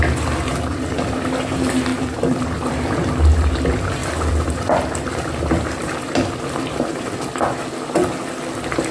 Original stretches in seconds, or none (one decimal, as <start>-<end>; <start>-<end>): 0.0-1.9; 3.1-4.0; 7.2-8.9